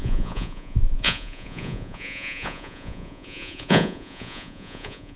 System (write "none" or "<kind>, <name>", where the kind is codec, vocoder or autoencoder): vocoder, Vocos